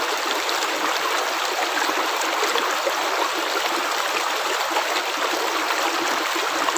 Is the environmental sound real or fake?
real